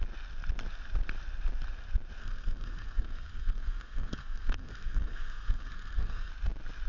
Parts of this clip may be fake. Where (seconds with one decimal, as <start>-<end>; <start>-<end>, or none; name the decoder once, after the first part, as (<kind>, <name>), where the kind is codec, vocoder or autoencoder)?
2.2-6.3 (codec, SNAC)